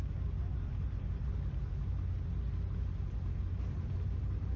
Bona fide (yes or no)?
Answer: yes